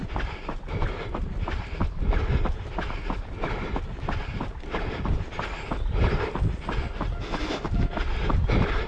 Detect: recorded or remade recorded